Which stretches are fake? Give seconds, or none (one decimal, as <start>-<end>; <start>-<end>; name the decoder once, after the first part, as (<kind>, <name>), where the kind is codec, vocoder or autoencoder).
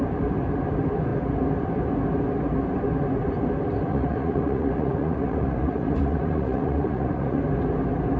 3.9-7.4 (vocoder, Vocos)